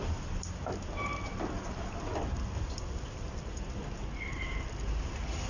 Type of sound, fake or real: real